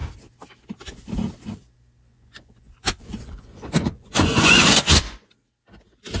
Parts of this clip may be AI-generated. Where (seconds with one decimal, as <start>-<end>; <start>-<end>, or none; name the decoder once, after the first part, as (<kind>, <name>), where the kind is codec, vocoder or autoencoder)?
2.1-5.3 (vocoder, Vocos)